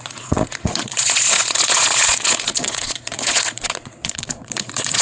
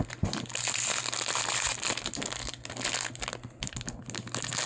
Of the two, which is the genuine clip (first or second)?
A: second